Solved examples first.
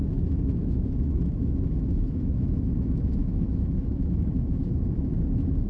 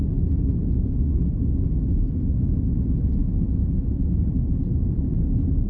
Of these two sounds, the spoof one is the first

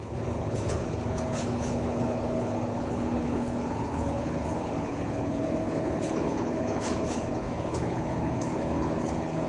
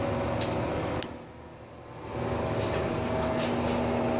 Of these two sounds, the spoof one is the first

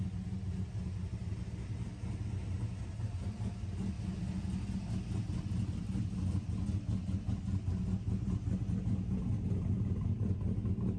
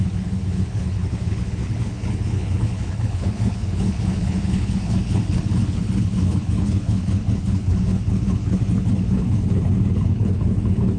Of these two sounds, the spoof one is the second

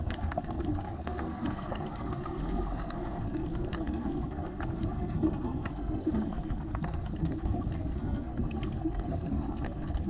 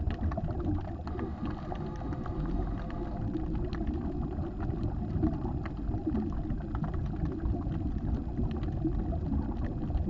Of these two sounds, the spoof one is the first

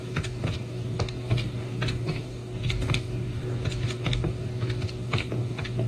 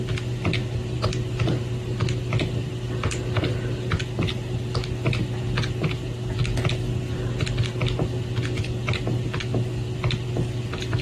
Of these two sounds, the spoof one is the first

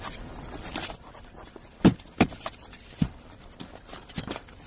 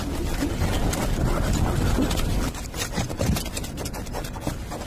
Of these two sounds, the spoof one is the first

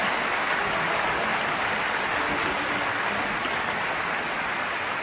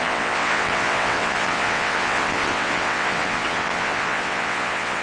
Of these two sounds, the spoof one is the second